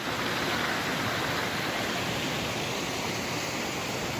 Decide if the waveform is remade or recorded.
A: recorded